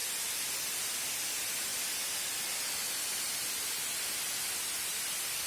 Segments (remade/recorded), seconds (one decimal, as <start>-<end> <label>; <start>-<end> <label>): 0.0-5.5 recorded